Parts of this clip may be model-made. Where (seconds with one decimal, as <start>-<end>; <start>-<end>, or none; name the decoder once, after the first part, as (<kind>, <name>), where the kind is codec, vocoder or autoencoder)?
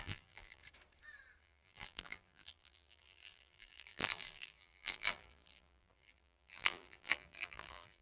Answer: 0.0-0.6 (vocoder, BigVGAN v2); 1.4-8.0